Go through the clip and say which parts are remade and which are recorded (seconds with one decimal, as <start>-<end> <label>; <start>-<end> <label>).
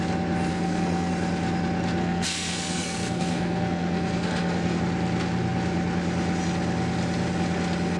0.0-0.5 recorded; 0.5-1.1 remade; 1.1-2.0 recorded; 2.0-4.8 remade; 4.8-8.0 recorded